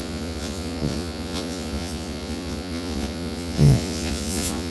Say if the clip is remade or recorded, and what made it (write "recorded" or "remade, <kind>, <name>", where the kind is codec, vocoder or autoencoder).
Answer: remade, vocoder, Vocos